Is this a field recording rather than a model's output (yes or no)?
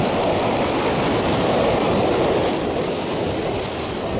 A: yes